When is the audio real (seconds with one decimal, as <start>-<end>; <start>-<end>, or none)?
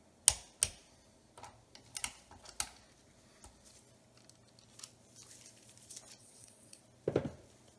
0.0-6.2; 6.8-7.8